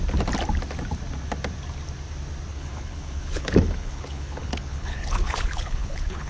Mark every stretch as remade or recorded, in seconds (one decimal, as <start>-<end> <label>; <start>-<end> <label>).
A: 0.0-2.5 recorded; 2.5-6.3 remade